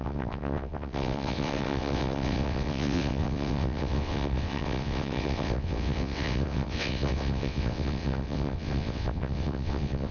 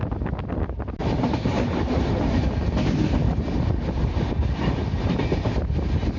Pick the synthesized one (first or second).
first